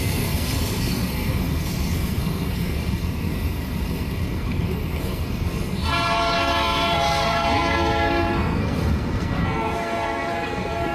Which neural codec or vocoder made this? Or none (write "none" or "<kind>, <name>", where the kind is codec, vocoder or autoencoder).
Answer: codec, SNAC